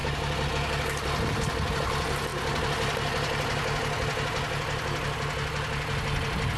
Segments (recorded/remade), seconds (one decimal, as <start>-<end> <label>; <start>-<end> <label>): 0.0-6.6 recorded